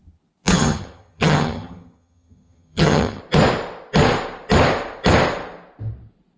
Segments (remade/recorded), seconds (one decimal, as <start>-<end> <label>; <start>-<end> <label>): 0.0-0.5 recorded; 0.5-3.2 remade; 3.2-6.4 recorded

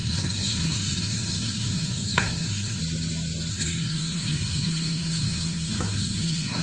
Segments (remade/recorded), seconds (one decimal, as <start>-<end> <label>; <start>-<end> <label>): 0.0-2.8 remade; 2.8-3.5 recorded; 3.5-6.6 remade

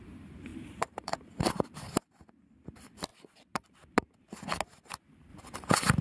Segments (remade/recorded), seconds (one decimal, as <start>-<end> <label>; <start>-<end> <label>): 0.0-0.5 recorded; 0.5-1.1 remade; 1.1-5.3 recorded; 5.3-6.0 remade

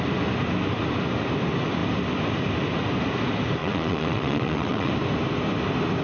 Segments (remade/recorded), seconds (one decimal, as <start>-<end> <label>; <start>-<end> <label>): 0.0-3.6 recorded; 3.6-4.9 remade; 4.9-6.0 recorded